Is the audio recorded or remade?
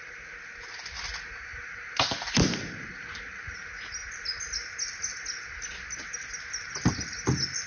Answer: recorded